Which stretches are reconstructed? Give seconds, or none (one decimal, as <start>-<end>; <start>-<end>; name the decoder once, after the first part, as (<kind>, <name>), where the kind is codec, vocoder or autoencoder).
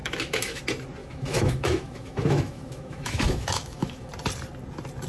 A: 0.0-0.6 (autoencoder, DAC-VAE); 1.0-4.1